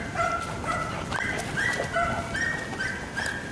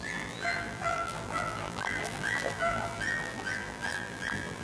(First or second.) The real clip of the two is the first